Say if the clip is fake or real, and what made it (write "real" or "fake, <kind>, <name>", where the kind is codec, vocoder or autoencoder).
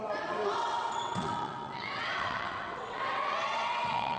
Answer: fake, vocoder, WaveNeXt